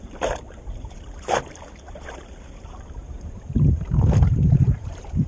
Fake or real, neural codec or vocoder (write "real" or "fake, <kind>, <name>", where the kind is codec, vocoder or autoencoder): fake, vocoder, BigVGAN v2